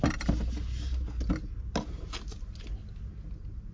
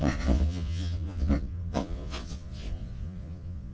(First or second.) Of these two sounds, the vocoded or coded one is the second